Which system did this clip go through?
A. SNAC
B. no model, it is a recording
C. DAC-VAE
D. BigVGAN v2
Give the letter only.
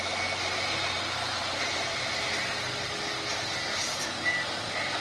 B